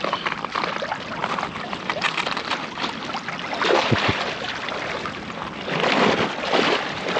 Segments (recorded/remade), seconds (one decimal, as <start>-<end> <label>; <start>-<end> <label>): 0.0-7.2 recorded